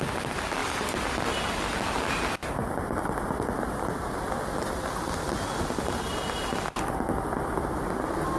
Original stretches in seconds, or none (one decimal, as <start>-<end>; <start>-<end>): 0.0-8.4